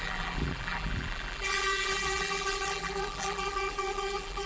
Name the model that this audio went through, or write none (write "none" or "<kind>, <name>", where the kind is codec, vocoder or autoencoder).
vocoder, BigVGAN v2